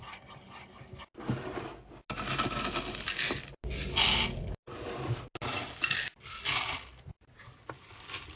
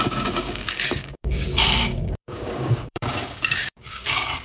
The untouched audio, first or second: first